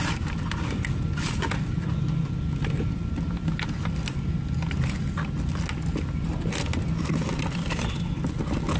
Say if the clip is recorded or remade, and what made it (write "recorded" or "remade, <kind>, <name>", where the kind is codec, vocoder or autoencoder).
recorded